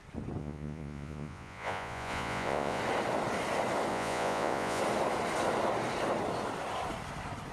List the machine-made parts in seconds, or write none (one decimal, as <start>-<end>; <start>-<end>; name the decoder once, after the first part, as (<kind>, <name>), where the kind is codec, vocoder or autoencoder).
0.4-2.8 (vocoder, Vocos); 3.9-4.8